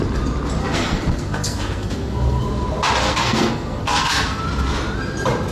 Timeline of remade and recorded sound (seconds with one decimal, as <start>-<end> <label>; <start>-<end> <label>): 0.0-0.6 recorded; 0.6-2.4 remade; 2.4-3.0 recorded; 3.0-4.4 remade; 4.4-5.5 recorded

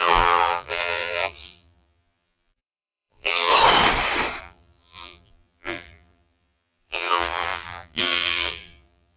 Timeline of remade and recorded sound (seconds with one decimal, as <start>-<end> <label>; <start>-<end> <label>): 0.0-3.5 remade; 3.5-4.4 recorded; 4.4-9.2 remade